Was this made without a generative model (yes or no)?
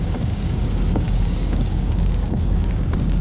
no